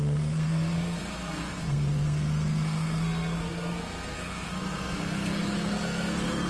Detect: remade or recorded remade